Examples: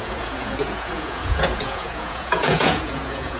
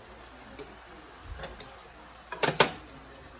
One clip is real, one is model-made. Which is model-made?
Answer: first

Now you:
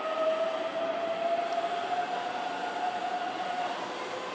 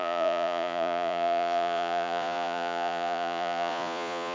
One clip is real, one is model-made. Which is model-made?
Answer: second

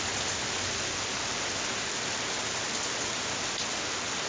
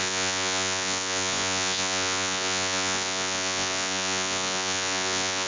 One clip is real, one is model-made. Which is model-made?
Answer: second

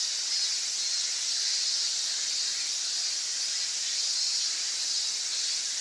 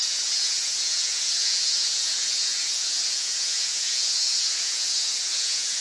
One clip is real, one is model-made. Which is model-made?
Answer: second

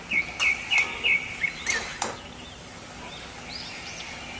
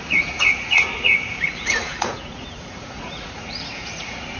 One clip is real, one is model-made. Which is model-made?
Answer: second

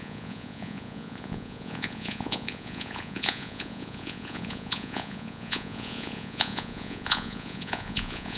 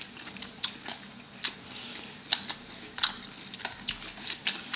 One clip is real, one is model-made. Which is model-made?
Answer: first